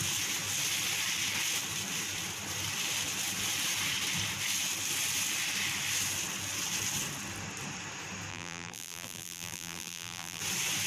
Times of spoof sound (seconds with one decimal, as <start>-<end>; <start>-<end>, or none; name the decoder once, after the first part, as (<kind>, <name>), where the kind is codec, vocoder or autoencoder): 8.3-10.4 (vocoder, BigVGAN v2)